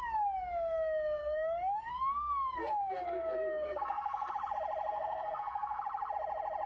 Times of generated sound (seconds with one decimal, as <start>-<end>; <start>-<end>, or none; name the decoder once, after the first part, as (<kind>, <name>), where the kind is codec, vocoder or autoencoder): 1.2-4.3 (codec, SNAC); 4.9-5.8